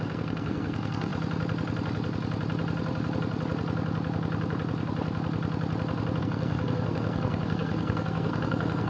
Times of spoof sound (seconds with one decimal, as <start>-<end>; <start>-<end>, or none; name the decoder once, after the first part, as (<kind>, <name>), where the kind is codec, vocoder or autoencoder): 0.0-1.1 (codec, SNAC); 6.2-8.9

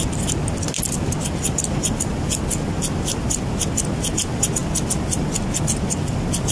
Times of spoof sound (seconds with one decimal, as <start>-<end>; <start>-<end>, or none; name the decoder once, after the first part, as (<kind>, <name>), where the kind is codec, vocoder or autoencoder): none

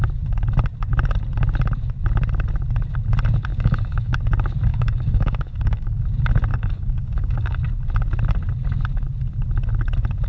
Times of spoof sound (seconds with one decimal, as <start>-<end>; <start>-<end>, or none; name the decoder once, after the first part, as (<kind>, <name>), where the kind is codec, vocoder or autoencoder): 3.5-4.2 (codec, DAC); 4.7-6.0; 6.5-7.6

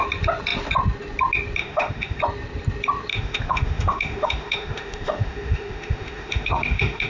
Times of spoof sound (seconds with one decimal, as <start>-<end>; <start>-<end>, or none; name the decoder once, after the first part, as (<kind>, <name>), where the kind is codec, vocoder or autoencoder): 1.6-2.2 (autoencoder, DAC-VAE); 3.1-7.1

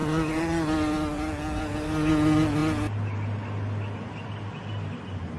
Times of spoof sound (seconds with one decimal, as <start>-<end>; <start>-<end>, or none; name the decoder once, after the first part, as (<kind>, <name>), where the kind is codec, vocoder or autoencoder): none

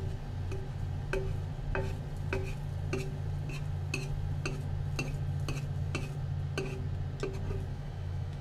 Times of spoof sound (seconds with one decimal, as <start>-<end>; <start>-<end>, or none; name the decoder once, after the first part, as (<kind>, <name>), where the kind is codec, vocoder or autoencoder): 7.7-8.4 (autoencoder, DAC-VAE)